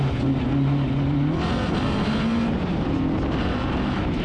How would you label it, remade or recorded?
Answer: recorded